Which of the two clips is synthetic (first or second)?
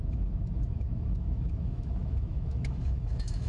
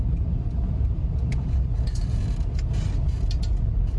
first